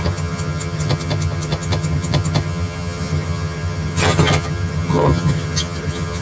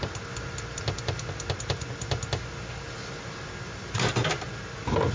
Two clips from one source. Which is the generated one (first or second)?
first